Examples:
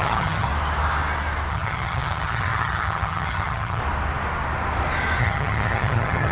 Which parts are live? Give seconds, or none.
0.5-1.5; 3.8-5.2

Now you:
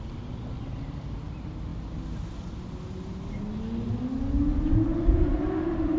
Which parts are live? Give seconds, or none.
0.0-6.0

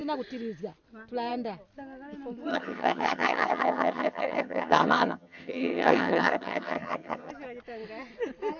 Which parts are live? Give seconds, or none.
0.0-2.5; 7.3-8.6